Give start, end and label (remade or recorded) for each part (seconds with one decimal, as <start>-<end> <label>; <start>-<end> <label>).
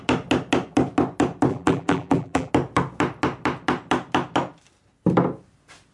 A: 0.0-1.5 recorded; 1.5-2.5 remade; 2.5-5.9 recorded